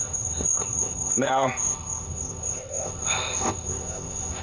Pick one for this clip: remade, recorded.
remade